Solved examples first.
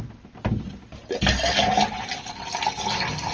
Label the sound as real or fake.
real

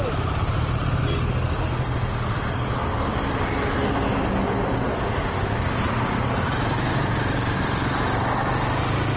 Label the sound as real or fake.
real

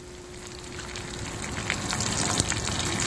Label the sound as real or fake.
real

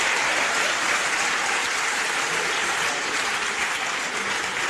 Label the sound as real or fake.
fake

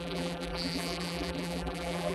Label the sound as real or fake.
fake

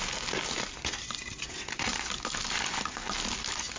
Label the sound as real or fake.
real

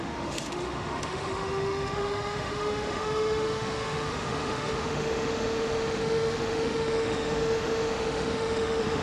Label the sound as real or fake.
fake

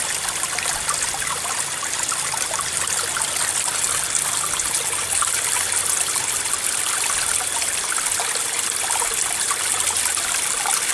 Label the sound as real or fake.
real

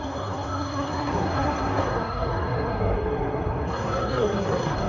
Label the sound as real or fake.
fake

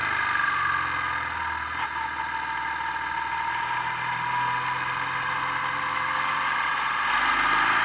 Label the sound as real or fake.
real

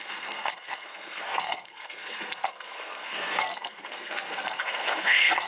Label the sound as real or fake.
fake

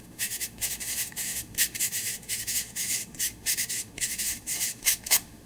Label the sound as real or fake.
fake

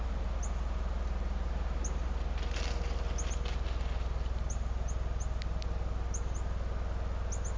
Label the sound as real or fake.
real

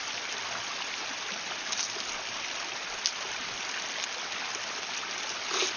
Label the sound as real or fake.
real